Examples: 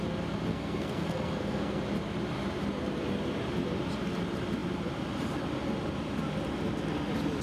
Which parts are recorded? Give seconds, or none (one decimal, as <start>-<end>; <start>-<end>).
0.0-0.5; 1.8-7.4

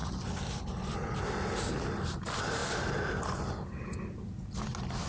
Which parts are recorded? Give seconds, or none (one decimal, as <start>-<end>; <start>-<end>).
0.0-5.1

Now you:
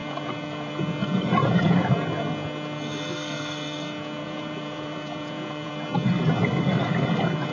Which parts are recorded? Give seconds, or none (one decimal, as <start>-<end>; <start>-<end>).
0.7-1.4; 1.9-4.2; 5.7-7.5

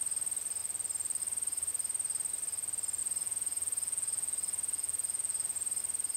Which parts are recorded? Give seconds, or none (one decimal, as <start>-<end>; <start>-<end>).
0.0-3.0; 5.8-6.2

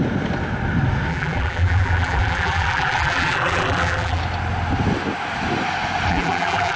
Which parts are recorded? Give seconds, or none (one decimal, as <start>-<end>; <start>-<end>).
0.0-1.1; 4.2-6.1

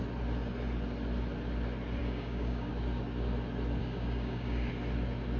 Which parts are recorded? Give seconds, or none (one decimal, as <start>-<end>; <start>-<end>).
0.0-2.0; 2.7-3.8; 4.7-5.4

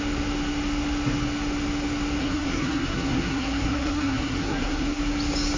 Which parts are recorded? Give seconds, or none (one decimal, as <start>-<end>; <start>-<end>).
0.0-2.2; 5.0-5.6